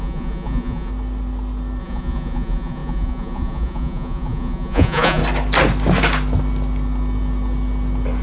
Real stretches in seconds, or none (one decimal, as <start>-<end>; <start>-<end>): 0.9-1.8; 5.2-8.2